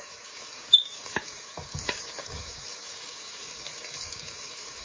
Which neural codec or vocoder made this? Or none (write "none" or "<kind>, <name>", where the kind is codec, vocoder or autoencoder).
codec, DAC